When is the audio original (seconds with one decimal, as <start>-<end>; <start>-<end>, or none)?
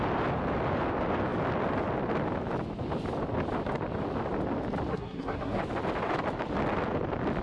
0.0-4.9; 5.6-7.4